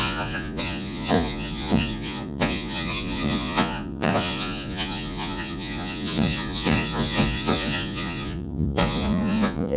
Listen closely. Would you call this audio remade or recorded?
remade